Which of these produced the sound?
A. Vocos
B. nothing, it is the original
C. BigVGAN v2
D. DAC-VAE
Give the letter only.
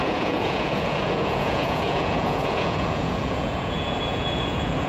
A